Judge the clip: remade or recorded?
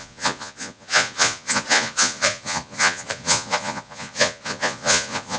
remade